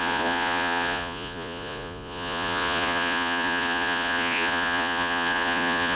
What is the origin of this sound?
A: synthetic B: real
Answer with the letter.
A